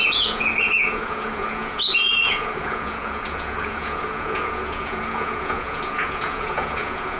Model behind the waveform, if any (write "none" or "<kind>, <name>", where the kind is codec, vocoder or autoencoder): vocoder, Vocos